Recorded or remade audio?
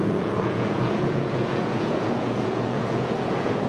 remade